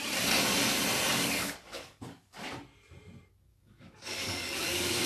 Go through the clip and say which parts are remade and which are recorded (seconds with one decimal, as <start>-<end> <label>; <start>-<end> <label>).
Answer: 0.0-1.1 recorded; 1.1-2.4 remade; 2.4-3.5 recorded; 3.5-5.1 remade